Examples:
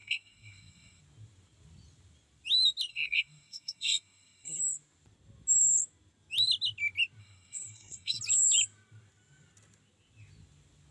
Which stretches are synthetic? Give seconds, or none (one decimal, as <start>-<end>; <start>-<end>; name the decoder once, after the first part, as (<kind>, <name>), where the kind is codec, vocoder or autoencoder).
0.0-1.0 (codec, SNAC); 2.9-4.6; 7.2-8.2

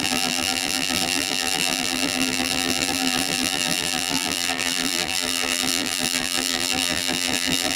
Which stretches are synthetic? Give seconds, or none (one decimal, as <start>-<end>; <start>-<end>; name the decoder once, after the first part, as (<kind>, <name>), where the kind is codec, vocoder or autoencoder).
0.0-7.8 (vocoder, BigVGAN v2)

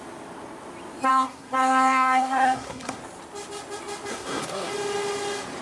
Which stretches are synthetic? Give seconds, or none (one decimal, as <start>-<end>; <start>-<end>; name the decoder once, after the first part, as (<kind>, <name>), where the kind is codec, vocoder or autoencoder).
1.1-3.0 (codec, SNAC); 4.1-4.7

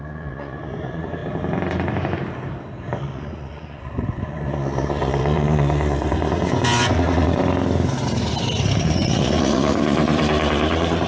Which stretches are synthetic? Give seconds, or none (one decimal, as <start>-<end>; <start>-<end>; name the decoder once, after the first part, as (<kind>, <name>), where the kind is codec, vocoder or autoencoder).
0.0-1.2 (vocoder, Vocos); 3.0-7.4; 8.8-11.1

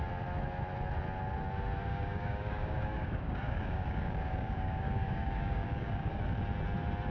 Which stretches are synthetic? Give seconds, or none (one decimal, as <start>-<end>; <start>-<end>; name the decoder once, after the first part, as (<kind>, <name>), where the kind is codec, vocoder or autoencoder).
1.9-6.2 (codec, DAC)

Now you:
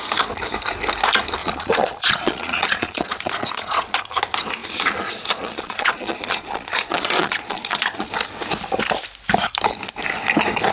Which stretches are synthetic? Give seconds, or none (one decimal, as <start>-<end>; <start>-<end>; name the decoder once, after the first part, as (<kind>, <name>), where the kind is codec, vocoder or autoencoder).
1.4-4.0 (vocoder, Vocos); 4.6-8.1

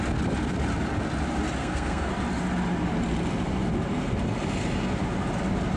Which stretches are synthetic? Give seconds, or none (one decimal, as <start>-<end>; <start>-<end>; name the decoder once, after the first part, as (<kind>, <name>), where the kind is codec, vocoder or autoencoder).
1.6-2.1 (codec, SNAC)